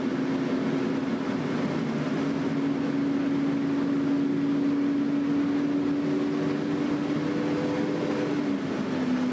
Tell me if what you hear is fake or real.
real